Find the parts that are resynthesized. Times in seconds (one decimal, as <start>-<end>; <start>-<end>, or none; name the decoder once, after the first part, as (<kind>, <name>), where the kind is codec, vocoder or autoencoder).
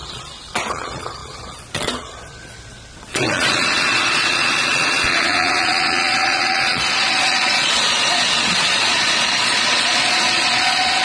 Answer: 0.0-11.0 (vocoder, Vocos)